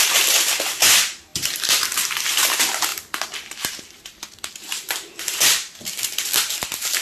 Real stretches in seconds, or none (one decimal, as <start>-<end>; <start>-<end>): 0.0-7.0